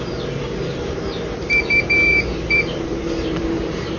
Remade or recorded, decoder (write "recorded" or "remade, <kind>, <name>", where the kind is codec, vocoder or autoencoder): remade, vocoder, BigVGAN v2